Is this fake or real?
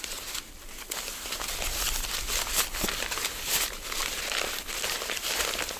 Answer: real